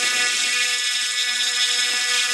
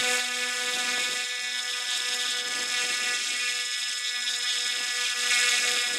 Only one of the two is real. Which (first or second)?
second